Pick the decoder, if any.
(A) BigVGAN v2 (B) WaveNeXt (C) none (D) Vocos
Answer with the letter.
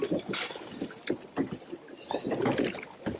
C